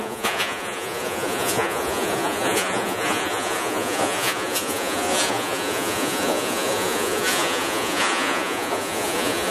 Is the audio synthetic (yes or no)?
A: yes